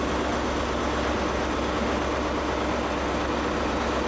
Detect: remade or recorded recorded